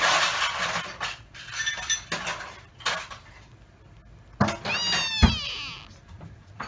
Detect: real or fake real